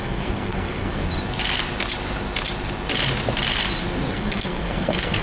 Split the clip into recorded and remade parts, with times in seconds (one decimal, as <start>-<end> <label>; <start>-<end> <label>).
0.0-1.0 remade; 1.0-4.1 recorded; 4.1-5.2 remade